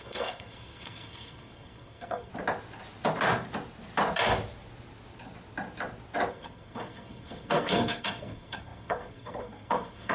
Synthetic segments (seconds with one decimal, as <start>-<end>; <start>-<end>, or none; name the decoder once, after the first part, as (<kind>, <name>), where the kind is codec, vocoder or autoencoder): 0.0-2.3 (codec, SNAC); 6.3-10.1